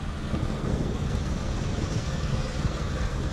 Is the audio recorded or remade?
remade